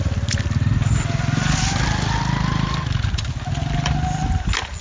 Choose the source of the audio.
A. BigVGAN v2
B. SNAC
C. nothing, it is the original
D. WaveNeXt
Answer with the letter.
C